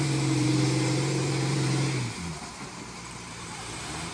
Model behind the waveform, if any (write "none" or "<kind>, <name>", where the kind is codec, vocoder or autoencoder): vocoder, BigVGAN v2